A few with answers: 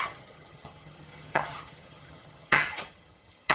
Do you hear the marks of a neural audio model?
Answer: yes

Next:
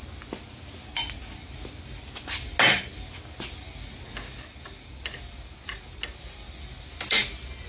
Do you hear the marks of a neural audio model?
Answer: no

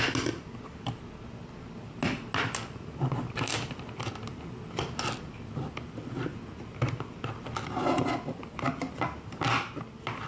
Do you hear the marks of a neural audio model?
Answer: no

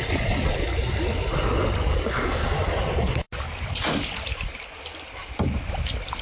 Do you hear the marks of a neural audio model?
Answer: no